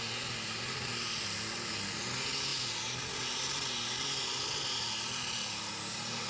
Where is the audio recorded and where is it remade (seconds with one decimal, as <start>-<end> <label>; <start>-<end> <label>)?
0.0-6.3 recorded